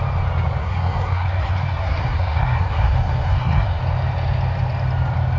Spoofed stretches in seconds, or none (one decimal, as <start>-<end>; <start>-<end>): 0.6-3.8